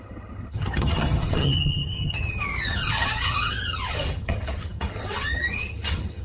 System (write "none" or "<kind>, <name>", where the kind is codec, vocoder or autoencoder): vocoder, HiFi-GAN